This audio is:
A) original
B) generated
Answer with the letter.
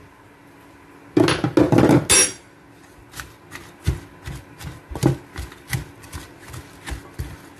A